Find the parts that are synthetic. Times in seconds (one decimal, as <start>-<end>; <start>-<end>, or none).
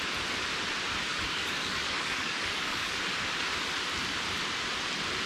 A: 1.1-3.0